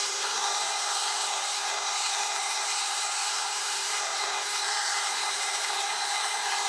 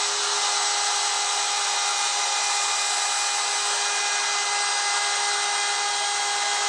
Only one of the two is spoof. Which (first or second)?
first